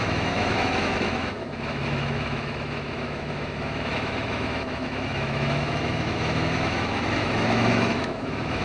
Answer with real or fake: fake